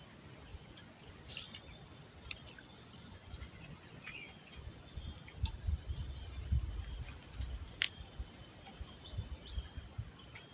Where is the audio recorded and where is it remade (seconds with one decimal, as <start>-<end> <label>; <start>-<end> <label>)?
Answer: 0.0-0.5 recorded; 0.5-1.2 remade; 1.2-2.7 recorded; 2.7-5.0 remade; 5.0-10.5 recorded